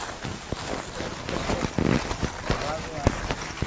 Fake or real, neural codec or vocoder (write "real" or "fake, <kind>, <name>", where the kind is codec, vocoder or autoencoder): real